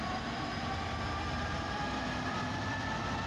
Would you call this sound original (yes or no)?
no